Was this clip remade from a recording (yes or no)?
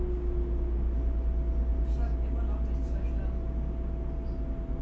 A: no